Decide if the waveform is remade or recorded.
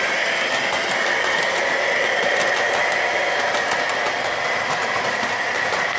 recorded